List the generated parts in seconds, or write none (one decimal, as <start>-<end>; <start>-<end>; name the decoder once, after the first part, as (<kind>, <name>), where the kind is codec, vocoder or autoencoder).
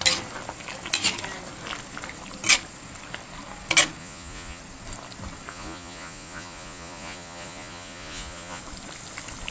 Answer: 4.0-4.6 (vocoder, Vocos); 5.5-8.6